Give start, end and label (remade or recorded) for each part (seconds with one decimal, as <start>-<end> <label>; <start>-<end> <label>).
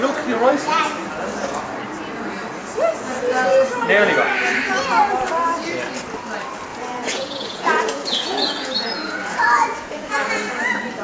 0.0-6.7 recorded; 6.7-10.5 remade; 10.5-11.0 recorded